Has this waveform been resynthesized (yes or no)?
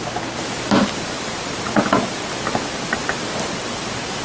yes